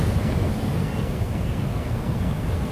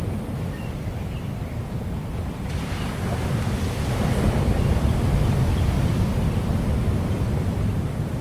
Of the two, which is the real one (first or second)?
second